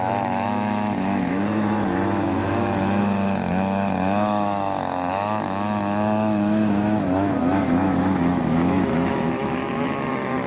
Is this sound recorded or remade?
remade